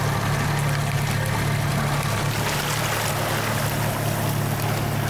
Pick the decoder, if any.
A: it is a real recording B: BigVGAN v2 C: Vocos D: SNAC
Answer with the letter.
A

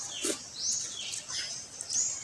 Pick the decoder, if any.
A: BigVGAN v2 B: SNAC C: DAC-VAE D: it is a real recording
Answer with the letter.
D